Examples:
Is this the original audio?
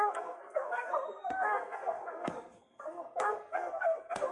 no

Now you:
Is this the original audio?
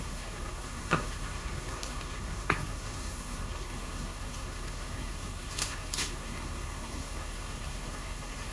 no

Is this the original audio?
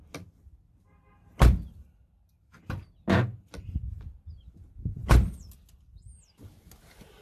yes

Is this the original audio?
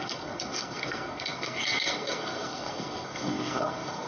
no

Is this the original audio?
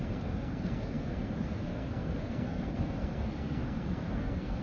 no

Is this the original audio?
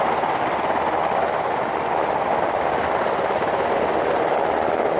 yes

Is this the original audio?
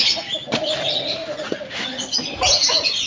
yes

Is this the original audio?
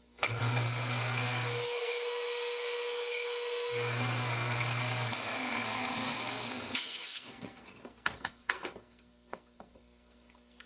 no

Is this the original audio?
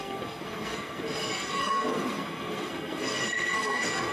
no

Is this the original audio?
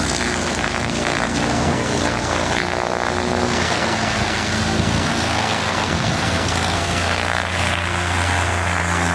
no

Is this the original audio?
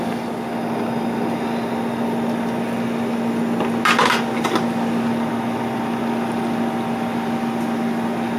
yes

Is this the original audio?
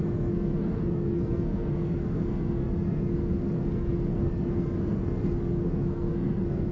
no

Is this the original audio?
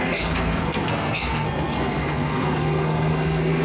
no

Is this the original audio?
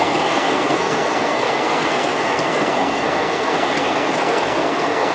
no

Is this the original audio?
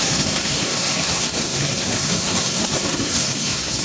no